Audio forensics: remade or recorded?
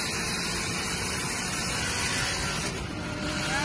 recorded